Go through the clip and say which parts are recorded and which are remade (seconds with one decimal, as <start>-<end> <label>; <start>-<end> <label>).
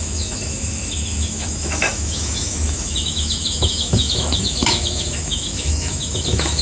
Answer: 0.0-6.6 remade